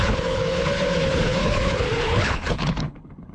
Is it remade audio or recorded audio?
remade